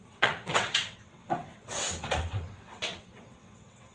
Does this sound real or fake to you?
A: fake